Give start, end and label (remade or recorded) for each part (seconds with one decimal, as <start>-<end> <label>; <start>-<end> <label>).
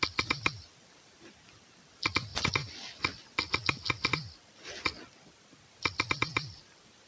0.0-7.1 recorded